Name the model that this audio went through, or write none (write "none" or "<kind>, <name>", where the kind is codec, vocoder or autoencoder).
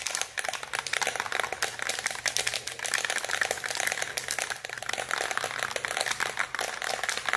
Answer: none